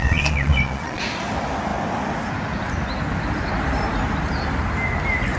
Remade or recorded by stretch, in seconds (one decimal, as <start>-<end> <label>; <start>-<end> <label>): 0.0-1.0 remade; 1.0-5.4 recorded

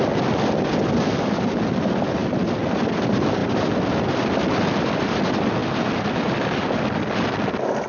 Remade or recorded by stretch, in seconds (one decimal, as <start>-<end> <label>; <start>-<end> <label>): 0.0-2.2 recorded; 2.2-2.9 remade; 2.9-3.4 recorded; 3.4-5.0 remade; 5.0-7.9 recorded

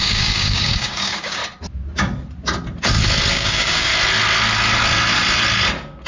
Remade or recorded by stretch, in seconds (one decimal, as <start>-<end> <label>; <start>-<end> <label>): 0.0-1.4 remade; 1.4-3.3 recorded; 3.3-3.9 remade; 3.9-6.1 recorded

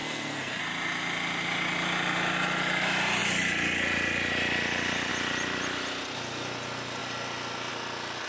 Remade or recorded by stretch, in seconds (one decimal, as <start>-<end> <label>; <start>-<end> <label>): 0.0-0.6 remade; 0.6-8.3 recorded

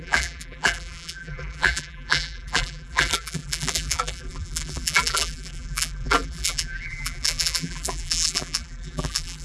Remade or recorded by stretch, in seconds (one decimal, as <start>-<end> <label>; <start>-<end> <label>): 0.0-9.4 remade

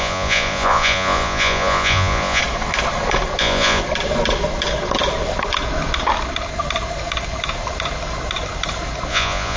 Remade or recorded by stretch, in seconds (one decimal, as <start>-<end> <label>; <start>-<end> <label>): 0.0-2.4 remade; 2.4-3.4 recorded; 3.4-3.8 remade; 3.8-9.1 recorded; 9.1-9.6 remade